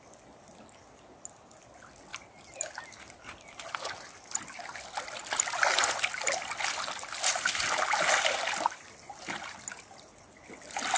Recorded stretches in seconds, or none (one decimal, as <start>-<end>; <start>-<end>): 0.0-11.0